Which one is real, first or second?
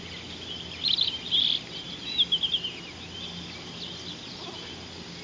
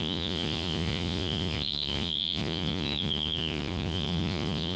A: first